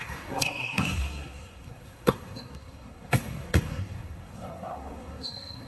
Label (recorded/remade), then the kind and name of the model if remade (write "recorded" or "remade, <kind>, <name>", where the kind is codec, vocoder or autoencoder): remade, codec, SNAC